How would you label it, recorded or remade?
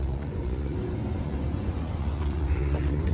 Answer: remade